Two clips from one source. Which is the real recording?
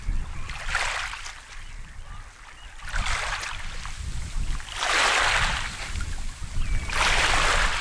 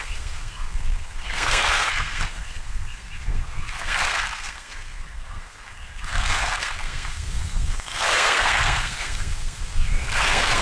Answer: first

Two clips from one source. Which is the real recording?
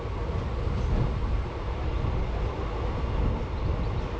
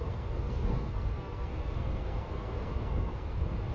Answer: first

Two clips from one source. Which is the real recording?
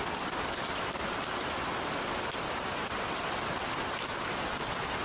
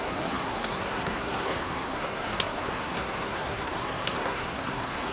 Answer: first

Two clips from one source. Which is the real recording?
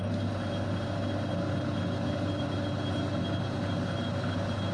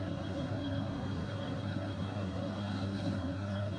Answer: first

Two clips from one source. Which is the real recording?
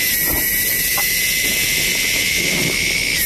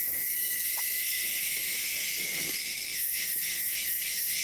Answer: first